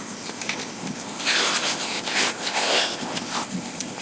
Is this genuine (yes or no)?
no